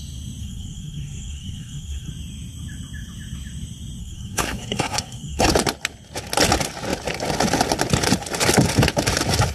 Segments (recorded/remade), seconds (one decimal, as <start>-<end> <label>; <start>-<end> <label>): 0.0-0.4 recorded; 0.4-2.1 remade; 2.1-4.0 recorded; 4.0-5.5 remade; 5.5-9.5 recorded